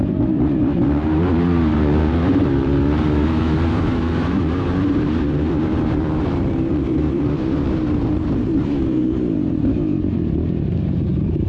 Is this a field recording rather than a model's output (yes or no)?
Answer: no